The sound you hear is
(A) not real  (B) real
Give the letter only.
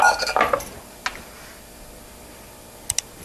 B